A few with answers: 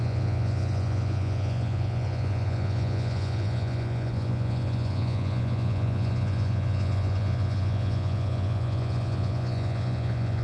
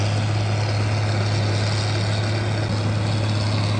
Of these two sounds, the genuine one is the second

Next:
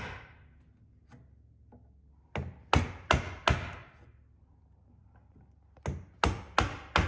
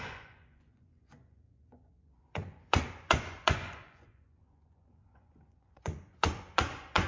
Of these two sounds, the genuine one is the first